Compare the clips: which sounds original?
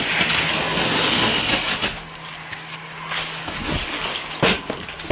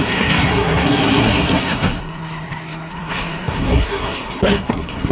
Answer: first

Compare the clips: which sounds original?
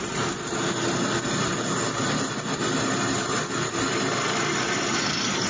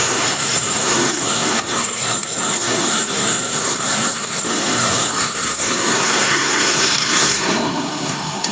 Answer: first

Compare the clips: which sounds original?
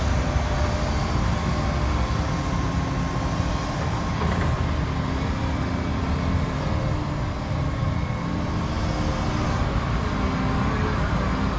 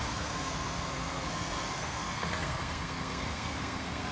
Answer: first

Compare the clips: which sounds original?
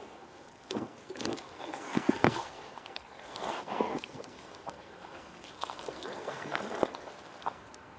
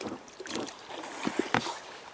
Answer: second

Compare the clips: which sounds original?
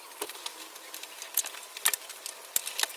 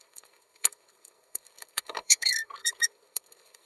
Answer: first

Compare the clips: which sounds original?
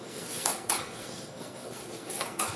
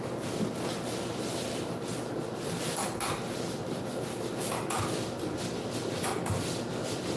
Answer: second